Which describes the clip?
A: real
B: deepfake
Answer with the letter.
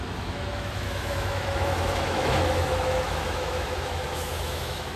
B